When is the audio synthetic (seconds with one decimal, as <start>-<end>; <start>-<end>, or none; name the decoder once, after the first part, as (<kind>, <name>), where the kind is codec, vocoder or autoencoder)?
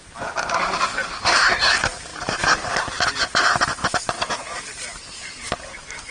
0.0-6.1 (vocoder, BigVGAN v2)